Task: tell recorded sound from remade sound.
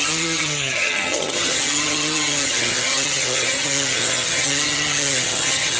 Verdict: remade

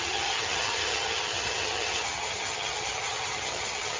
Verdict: remade